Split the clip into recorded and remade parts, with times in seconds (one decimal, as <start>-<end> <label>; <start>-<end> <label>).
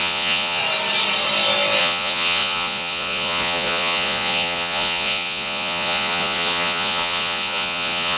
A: 0.0-0.6 remade; 0.6-1.8 recorded; 1.8-8.2 remade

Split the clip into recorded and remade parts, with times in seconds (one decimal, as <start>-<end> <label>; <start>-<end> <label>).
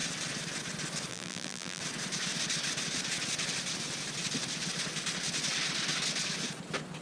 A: 0.0-1.1 recorded; 1.1-1.8 remade; 1.8-7.0 recorded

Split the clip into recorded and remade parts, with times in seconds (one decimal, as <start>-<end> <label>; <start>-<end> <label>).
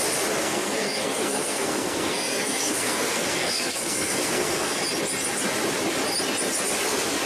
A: 0.0-0.4 recorded; 0.4-4.8 remade; 4.8-7.3 recorded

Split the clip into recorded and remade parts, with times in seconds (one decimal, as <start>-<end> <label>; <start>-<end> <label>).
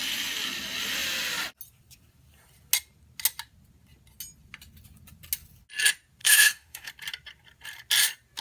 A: 0.0-6.2 recorded; 6.2-6.9 remade; 6.9-8.4 recorded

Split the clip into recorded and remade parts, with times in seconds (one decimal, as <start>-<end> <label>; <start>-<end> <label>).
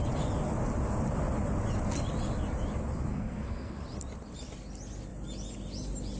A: 0.0-3.1 recorded; 3.1-3.8 remade; 3.8-6.2 recorded